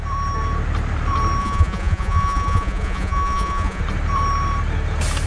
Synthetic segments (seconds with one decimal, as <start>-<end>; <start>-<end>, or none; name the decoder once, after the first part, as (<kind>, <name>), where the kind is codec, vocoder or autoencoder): 1.4-3.8 (vocoder, Vocos)